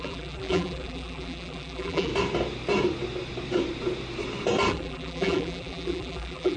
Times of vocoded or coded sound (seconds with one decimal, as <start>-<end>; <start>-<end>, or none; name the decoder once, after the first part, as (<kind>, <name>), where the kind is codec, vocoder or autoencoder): 0.0-2.1 (vocoder, BigVGAN v2); 4.7-6.6